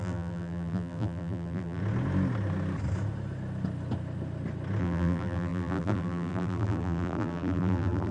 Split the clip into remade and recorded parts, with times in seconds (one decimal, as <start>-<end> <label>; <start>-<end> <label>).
0.0-1.8 remade; 1.8-4.8 recorded; 4.8-8.1 remade